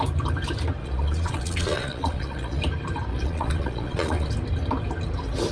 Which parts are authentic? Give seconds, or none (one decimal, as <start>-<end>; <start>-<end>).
0.0-0.8; 2.6-3.1; 4.3-5.5